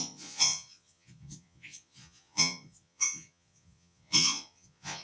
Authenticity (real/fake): fake